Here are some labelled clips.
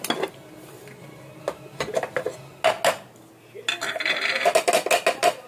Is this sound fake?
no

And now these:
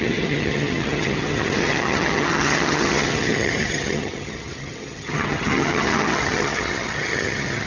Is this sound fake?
yes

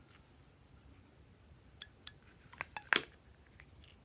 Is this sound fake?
no